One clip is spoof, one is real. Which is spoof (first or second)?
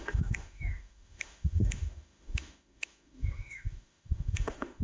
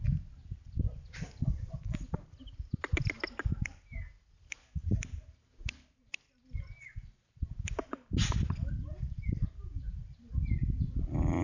first